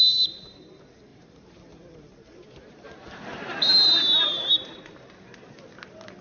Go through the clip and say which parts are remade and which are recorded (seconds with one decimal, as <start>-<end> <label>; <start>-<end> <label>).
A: 0.0-1.1 recorded; 1.1-4.8 remade; 4.8-6.2 recorded